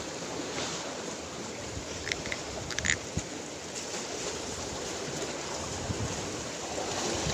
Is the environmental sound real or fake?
real